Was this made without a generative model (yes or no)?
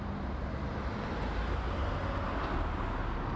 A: yes